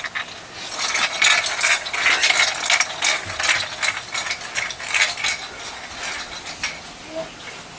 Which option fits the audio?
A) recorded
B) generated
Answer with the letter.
A